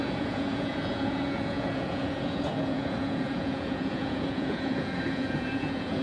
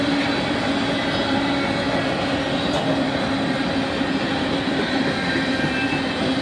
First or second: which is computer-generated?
first